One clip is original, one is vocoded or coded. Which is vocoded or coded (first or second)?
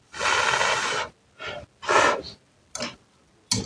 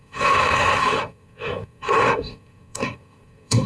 second